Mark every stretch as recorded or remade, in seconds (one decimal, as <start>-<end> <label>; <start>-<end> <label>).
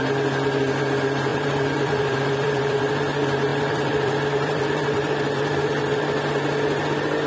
0.0-1.3 recorded; 1.3-2.9 remade; 2.9-3.5 recorded; 3.5-6.0 remade; 6.0-7.3 recorded